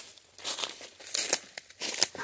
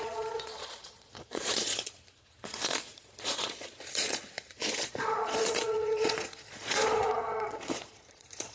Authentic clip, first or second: first